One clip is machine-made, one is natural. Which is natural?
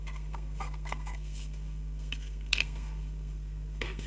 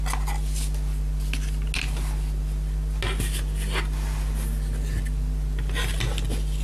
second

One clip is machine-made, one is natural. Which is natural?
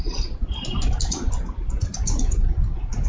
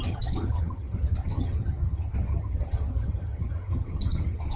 first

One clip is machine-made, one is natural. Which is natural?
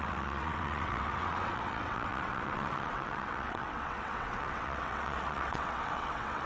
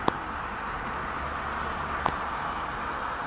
second